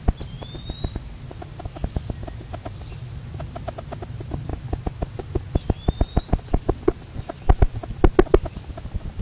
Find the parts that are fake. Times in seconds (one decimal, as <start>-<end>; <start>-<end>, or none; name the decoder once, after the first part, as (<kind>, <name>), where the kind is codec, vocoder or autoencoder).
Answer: none